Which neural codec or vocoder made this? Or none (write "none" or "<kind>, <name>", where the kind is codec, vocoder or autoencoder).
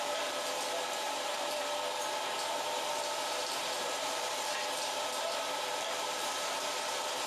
vocoder, BigVGAN v2